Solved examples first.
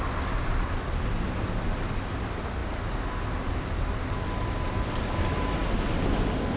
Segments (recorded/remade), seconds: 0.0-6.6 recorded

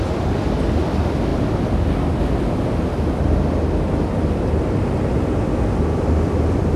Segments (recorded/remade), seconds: 0.0-6.8 recorded

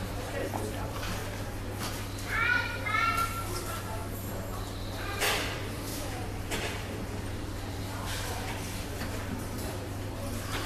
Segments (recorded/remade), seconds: 0.0-1.2 remade; 1.2-1.8 recorded; 1.8-4.0 remade; 4.0-5.1 recorded; 5.1-10.7 remade

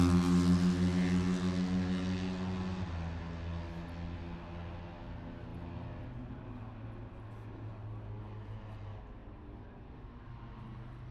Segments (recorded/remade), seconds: 0.0-9.2 recorded; 9.2-10.3 remade; 10.3-11.1 recorded

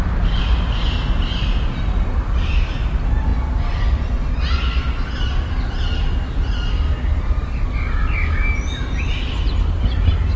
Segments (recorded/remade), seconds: 0.0-10.4 recorded

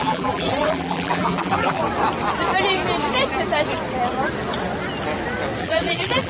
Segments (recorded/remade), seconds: 0.0-1.8 remade; 1.8-5.6 recorded; 5.6-6.3 remade

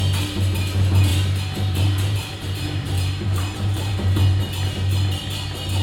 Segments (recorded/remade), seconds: 0.0-1.1 recorded; 1.1-4.2 remade; 4.2-5.8 recorded